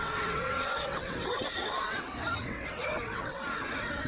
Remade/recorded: remade